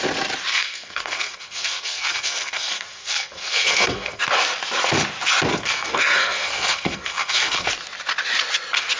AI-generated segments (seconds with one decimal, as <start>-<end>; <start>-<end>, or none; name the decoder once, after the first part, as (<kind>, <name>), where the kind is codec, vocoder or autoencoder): 0.5-4.2 (codec, SNAC); 5.5-7.7